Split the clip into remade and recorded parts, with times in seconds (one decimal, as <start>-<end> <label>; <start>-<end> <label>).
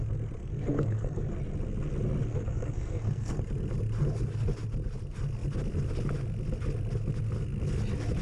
0.0-0.4 recorded; 0.4-1.3 remade; 1.3-2.3 recorded; 2.3-3.4 remade; 3.4-8.2 recorded